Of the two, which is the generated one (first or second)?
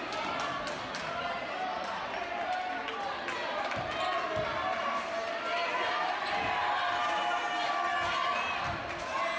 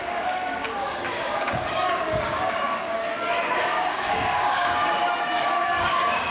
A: second